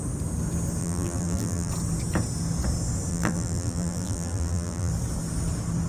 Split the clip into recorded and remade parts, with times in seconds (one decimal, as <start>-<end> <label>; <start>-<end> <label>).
0.0-0.8 recorded; 0.8-1.7 remade; 1.7-3.1 recorded; 3.1-4.9 remade; 4.9-5.9 recorded